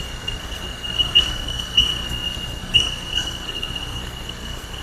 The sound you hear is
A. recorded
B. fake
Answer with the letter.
B